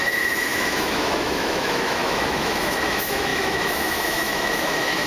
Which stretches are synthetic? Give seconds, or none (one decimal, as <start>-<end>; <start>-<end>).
0.0-5.1